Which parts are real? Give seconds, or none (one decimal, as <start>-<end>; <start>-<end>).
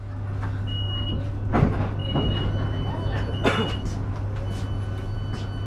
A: 0.0-5.7